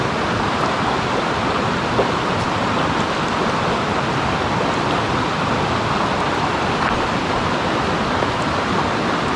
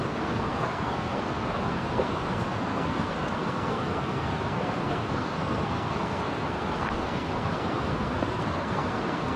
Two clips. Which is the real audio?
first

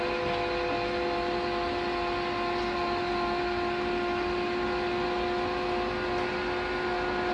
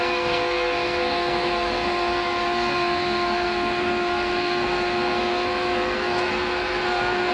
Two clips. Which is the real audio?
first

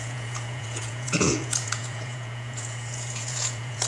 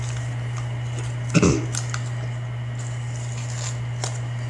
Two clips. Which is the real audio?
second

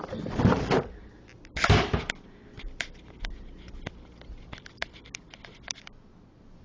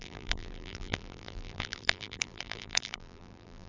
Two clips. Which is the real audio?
first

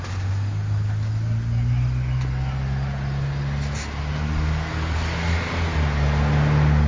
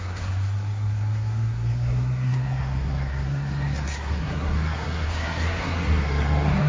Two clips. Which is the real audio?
first